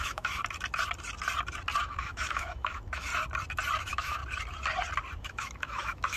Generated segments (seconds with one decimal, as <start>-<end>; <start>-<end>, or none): 0.0-0.4; 1.8-3.1; 3.8-4.2; 5.2-6.2